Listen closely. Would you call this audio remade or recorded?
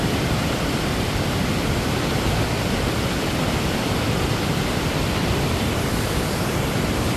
remade